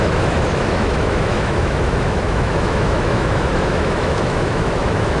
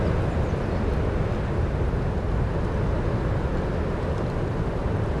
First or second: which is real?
second